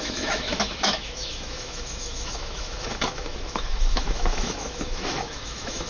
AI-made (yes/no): yes